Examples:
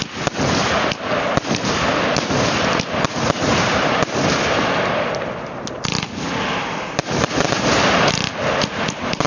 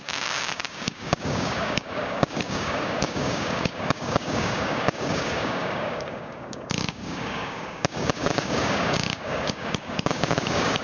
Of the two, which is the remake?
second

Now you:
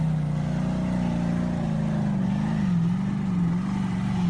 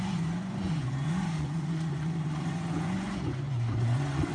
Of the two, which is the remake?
second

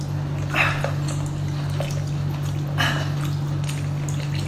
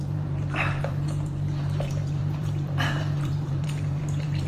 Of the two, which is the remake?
second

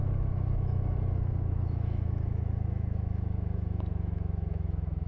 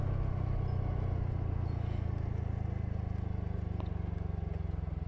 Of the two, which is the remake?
first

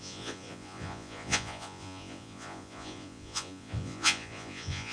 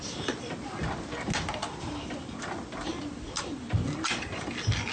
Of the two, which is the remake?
first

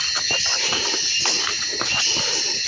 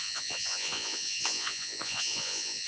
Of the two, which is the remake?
second